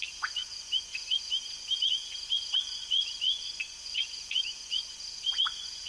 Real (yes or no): no